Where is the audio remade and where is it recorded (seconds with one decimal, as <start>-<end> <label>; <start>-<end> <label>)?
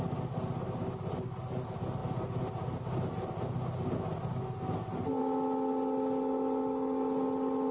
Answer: 0.0-7.7 recorded